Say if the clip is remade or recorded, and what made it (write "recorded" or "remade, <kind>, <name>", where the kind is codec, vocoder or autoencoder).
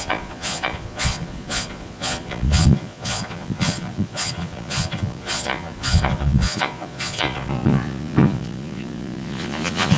remade, vocoder, Vocos